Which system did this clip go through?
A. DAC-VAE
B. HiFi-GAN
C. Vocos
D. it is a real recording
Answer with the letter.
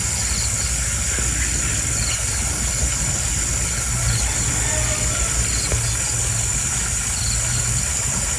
D